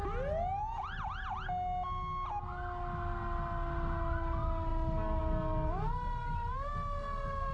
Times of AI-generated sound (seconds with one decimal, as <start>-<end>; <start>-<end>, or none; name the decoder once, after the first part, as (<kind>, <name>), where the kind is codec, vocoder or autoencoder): none